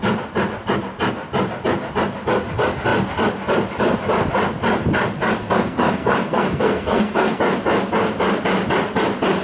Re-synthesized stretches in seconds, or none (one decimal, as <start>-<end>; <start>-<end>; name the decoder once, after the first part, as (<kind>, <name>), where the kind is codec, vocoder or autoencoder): 5.4-7.4 (codec, SNAC)